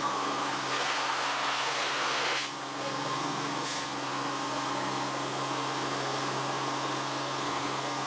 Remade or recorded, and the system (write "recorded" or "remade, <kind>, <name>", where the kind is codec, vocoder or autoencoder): remade, codec, SNAC